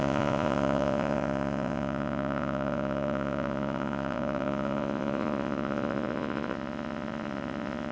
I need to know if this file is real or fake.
fake